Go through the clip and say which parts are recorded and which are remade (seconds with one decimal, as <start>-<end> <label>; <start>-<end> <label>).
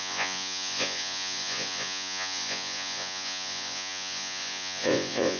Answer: 0.0-5.4 remade